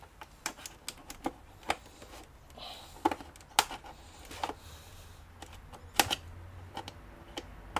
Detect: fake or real real